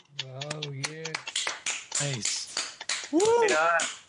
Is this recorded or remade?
recorded